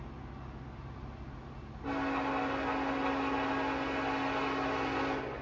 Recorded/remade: recorded